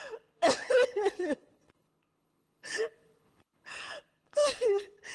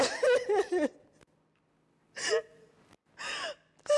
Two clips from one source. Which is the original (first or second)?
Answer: second